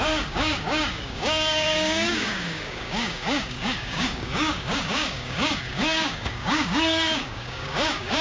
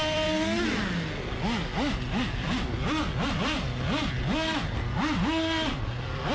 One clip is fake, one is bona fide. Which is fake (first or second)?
first